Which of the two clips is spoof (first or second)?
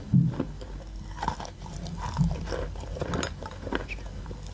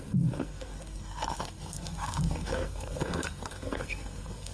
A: second